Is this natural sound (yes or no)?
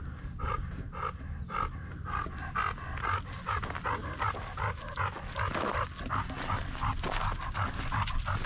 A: yes